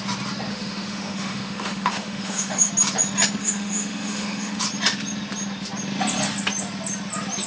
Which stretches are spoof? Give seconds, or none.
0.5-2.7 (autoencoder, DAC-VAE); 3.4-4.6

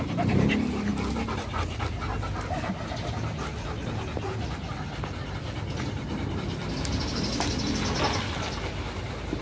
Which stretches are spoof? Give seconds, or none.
6.6-7.6 (vocoder, BigVGAN v2)

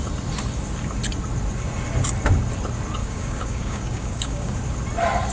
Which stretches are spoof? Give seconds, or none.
3.0-4.6 (codec, DAC)

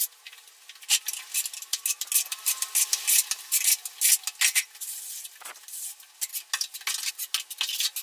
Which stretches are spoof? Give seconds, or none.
none